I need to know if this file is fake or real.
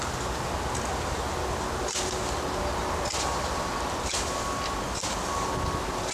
real